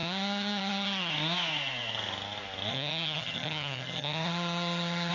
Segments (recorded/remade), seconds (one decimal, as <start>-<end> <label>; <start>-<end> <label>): 0.0-1.1 remade; 1.1-2.7 recorded; 2.7-5.1 remade